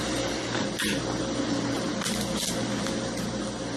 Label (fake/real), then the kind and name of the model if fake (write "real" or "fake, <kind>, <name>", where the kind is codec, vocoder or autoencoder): real